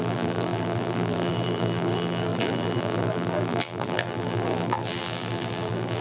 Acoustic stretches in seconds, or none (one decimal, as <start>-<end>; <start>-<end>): none